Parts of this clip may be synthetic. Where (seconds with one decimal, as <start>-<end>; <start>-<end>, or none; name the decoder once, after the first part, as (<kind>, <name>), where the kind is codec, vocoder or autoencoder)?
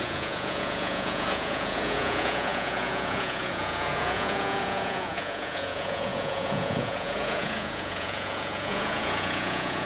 0.0-9.9 (vocoder, Vocos)